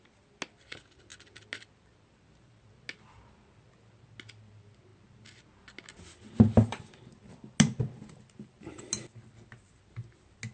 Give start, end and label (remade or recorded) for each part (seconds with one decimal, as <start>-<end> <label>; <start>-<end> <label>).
0.0-10.5 recorded